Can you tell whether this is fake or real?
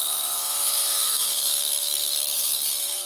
fake